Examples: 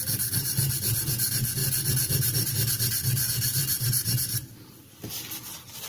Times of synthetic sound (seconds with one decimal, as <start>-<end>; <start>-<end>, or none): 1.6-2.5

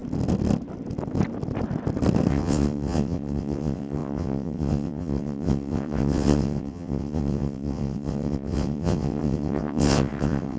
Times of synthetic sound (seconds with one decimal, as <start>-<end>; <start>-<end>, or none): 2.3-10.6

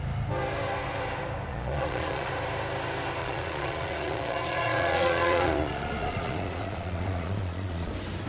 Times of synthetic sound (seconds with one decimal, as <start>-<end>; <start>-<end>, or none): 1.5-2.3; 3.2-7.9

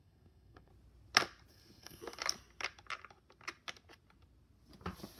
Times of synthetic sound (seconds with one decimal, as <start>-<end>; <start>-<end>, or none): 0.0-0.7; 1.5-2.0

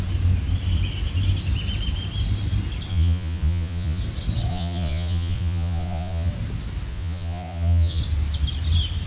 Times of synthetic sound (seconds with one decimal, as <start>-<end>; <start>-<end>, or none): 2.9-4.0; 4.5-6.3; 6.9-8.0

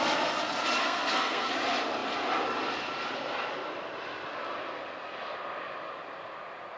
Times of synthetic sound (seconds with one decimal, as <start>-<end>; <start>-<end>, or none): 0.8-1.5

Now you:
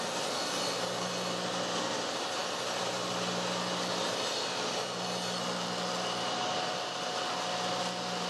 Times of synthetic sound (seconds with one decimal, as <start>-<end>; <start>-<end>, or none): none

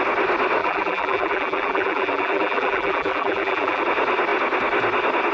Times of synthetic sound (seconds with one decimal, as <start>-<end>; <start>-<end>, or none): 0.6-3.8